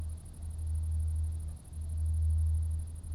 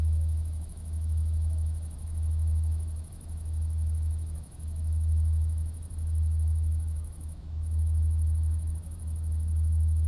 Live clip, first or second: first